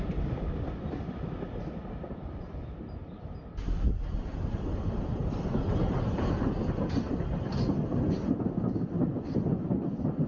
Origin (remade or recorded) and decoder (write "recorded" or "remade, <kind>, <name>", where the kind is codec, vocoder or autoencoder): recorded